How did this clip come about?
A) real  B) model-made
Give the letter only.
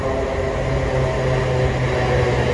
A